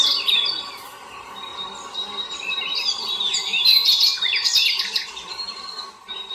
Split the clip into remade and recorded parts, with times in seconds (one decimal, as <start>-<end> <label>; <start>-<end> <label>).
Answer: 0.0-1.5 recorded; 1.5-5.3 remade; 5.3-6.3 recorded